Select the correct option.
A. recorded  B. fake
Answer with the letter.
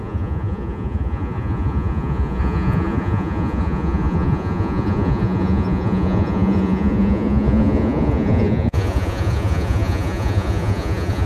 B